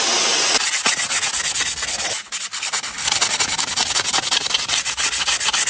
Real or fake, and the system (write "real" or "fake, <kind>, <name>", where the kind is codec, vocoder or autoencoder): real